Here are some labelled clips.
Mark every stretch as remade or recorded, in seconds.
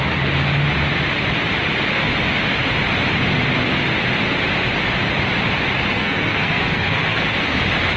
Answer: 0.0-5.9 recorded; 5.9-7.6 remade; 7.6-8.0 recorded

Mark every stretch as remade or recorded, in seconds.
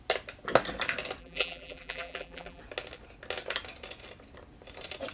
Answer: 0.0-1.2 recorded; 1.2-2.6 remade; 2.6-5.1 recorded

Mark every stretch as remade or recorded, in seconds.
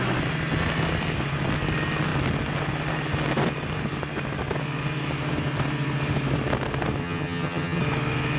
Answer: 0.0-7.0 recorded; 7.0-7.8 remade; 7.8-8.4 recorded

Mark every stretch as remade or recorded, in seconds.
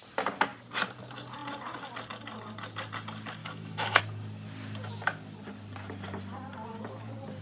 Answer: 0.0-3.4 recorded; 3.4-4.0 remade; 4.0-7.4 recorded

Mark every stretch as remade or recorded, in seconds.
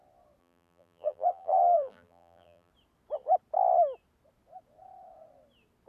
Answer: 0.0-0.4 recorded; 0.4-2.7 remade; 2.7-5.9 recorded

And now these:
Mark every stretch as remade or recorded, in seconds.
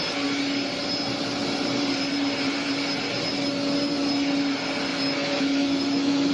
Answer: 0.0-4.9 recorded; 4.9-6.3 remade